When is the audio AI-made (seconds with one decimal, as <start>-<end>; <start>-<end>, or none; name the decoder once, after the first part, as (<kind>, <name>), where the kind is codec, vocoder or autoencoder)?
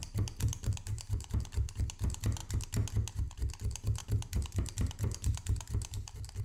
0.0-1.3 (vocoder, BigVGAN v2); 4.0-6.4